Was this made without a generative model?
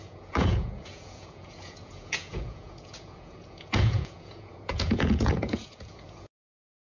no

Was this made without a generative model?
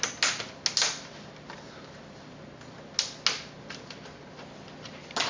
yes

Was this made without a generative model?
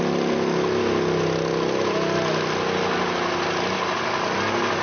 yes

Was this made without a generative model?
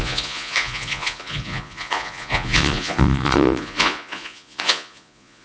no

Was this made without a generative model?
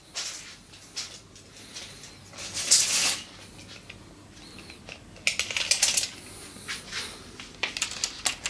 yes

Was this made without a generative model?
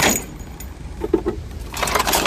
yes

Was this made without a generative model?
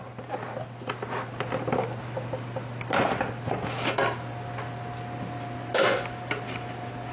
yes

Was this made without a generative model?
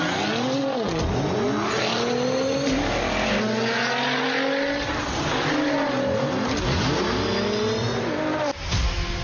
yes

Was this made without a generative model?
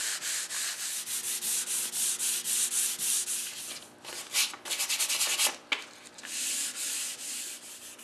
yes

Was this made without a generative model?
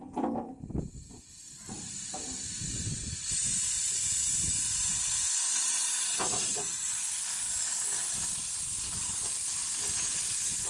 yes